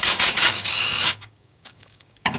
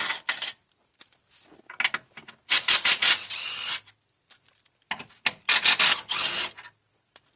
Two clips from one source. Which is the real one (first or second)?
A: second